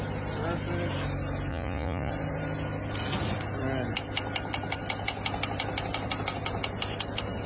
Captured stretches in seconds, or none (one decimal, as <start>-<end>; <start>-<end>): 0.0-1.5; 2.1-7.5